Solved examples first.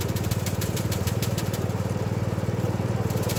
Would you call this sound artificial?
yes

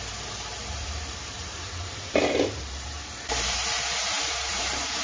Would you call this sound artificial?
yes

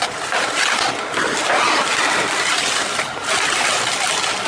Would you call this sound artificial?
no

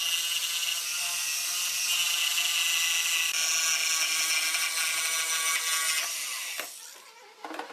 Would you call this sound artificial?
no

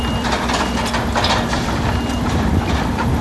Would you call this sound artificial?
yes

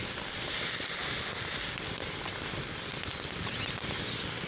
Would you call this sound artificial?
no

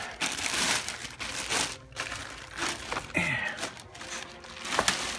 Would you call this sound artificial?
no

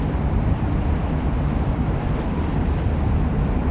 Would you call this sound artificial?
no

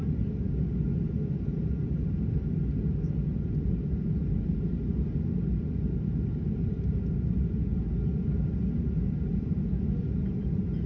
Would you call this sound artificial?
no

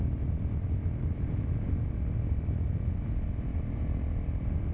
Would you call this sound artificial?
yes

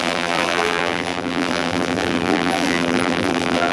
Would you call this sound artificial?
yes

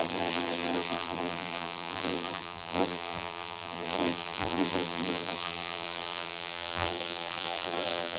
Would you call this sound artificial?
yes